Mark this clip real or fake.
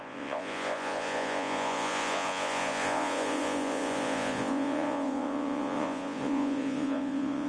fake